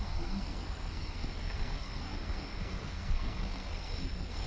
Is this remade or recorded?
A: remade